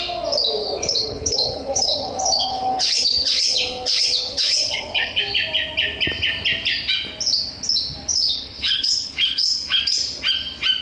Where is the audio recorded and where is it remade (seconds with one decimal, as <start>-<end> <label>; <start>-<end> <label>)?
0.0-0.6 recorded; 0.6-5.2 remade; 5.2-8.1 recorded; 8.1-9.8 remade; 9.8-10.8 recorded